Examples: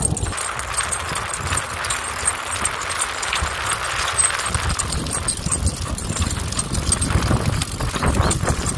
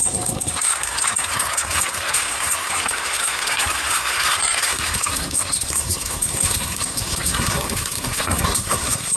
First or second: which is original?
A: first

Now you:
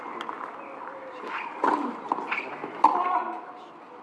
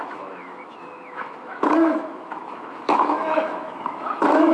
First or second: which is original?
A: first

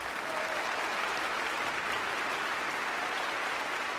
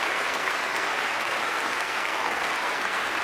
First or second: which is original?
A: first